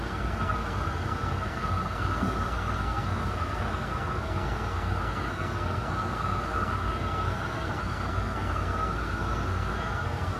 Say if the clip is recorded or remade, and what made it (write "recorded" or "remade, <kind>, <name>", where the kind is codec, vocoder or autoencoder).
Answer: remade, codec, SNAC